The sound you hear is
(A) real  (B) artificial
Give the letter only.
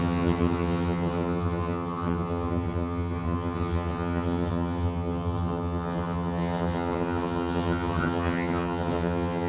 B